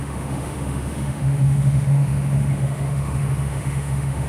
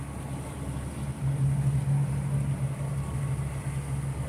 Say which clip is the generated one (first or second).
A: first